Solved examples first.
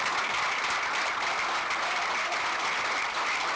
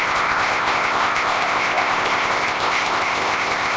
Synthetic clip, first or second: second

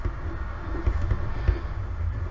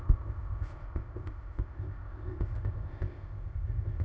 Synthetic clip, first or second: second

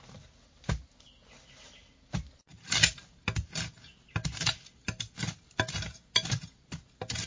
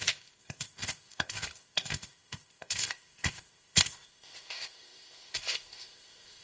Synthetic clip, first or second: second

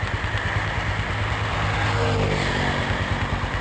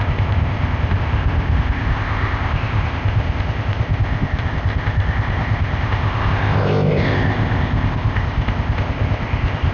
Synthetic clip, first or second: second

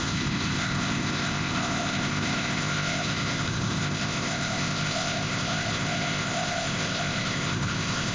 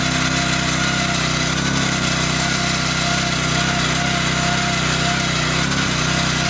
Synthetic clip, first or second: first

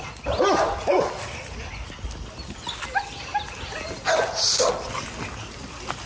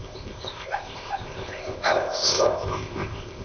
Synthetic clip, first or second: second